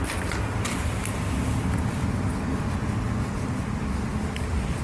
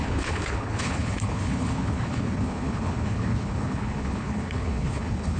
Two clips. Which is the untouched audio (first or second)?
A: first